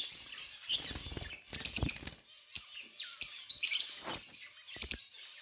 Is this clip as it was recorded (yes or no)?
yes